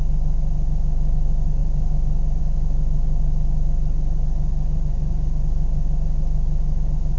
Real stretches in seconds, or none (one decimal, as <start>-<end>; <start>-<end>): 0.0-7.2